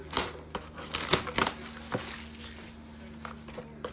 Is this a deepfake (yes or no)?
no